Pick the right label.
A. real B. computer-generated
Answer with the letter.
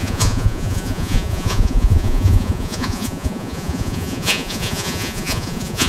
B